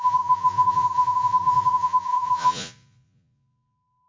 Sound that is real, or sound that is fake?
fake